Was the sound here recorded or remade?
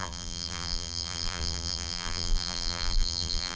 remade